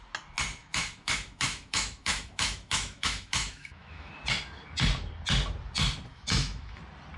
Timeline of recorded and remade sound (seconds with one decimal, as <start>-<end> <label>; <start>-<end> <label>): 0.0-0.6 recorded; 0.6-4.1 remade; 4.1-6.1 recorded; 6.1-6.8 remade; 6.8-7.2 recorded